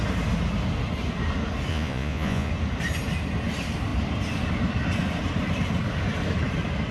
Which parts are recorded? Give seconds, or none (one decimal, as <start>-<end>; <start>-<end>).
0.0-1.7; 2.5-6.9